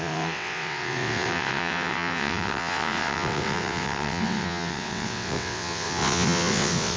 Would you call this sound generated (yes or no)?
yes